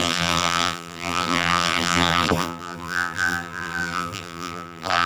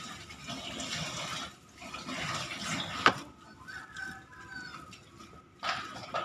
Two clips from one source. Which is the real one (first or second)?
second